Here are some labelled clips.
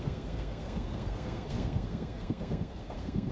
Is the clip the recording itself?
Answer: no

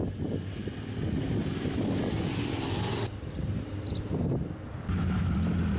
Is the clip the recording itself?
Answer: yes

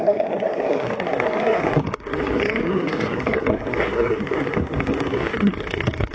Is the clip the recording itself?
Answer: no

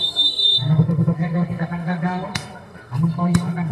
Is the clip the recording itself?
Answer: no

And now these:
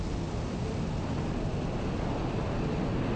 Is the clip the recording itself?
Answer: yes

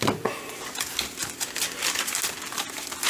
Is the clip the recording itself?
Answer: yes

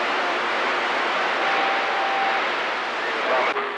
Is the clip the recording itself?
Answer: yes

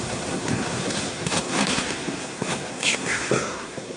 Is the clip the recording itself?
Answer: no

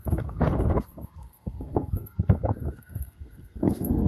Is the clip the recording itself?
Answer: no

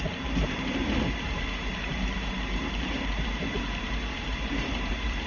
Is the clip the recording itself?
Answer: yes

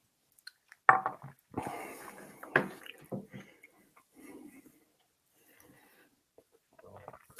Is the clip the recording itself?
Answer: yes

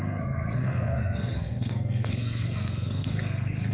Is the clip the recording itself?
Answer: no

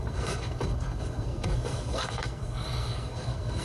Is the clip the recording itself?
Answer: no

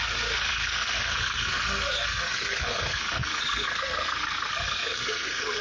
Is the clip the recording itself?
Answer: no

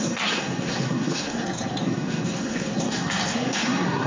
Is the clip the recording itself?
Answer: no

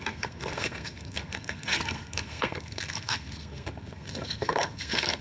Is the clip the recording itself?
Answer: no